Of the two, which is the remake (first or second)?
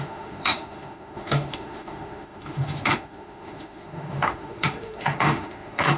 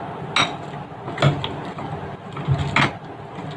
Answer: first